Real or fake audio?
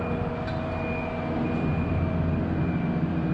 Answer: real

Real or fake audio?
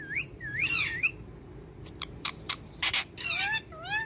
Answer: fake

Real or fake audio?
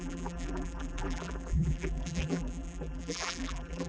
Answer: fake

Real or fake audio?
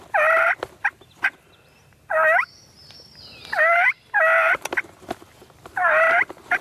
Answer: real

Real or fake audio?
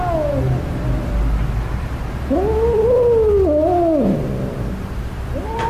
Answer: real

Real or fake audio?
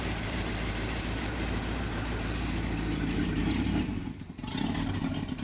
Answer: fake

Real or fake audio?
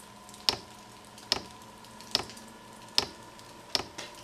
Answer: real